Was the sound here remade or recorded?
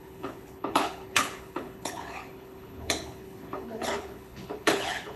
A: remade